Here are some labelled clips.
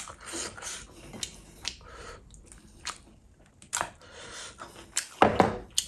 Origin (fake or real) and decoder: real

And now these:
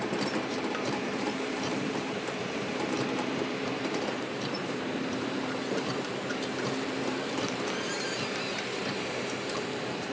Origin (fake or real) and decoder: fake, vocoder, BigVGAN v2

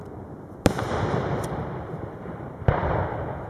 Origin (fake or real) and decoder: fake, vocoder, BigVGAN v2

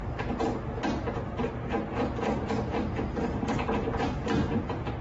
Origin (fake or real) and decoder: real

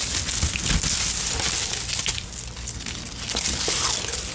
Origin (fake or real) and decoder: real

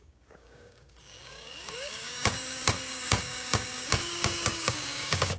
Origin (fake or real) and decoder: fake, codec, DAC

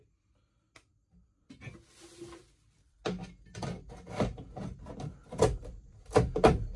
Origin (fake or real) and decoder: real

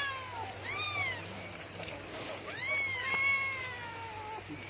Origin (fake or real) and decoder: real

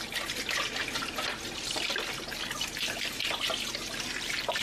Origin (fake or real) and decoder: real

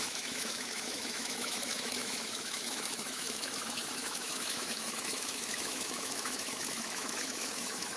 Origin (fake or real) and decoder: fake, autoencoder, DAC-VAE